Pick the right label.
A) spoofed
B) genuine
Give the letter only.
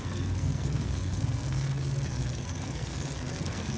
A